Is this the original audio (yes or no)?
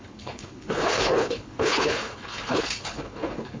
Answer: no